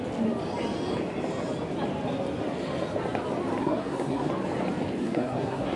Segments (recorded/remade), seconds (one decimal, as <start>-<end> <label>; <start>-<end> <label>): 0.0-3.6 recorded; 3.6-4.3 remade; 4.3-5.0 recorded; 5.0-5.8 remade